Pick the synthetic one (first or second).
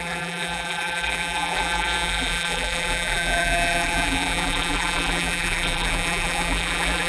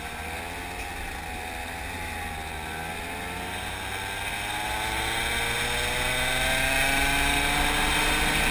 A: first